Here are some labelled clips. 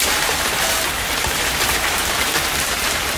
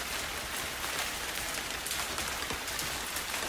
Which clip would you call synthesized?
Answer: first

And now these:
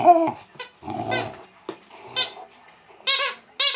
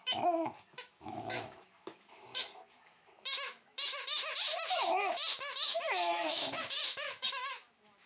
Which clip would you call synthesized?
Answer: second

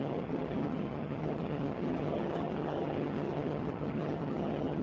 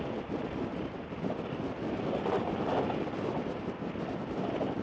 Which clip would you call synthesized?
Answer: first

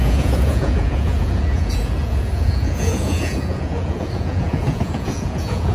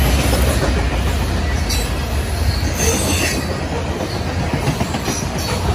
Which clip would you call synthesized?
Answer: first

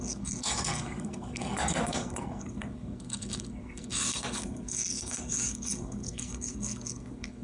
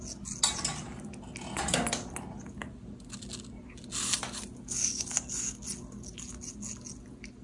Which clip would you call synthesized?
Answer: first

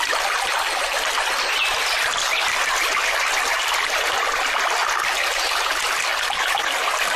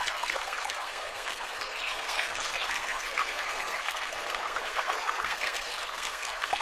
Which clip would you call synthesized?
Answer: second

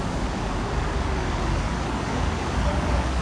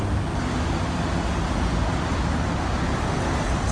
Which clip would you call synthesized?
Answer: first